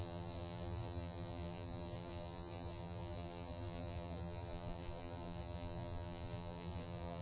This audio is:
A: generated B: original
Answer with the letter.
A